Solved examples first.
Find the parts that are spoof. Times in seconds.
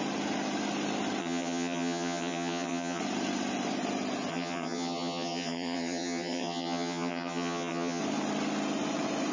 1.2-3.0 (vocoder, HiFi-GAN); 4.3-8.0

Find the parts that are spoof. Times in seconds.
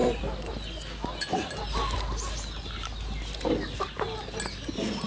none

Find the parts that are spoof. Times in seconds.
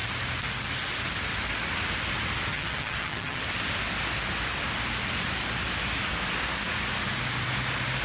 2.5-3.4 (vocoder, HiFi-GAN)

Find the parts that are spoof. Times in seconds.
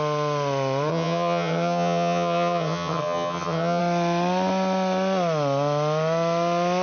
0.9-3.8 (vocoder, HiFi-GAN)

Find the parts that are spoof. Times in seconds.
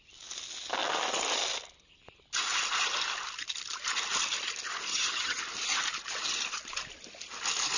4.9-5.4 (vocoder, HiFi-GAN)